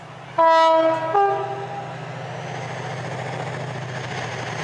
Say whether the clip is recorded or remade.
recorded